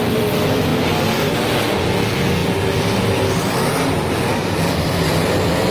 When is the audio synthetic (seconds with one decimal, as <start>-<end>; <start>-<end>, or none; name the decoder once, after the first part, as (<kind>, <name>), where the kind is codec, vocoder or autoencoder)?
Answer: none